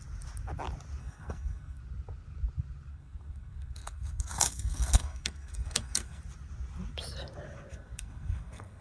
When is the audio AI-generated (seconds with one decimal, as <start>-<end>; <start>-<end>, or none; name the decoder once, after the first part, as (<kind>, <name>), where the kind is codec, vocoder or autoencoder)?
1.0-1.8 (codec, SNAC); 2.9-6.2; 7.7-8.8